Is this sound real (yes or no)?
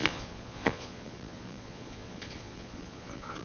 no